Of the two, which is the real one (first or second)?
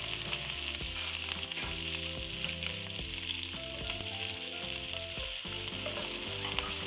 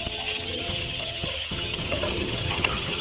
first